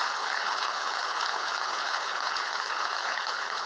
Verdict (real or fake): fake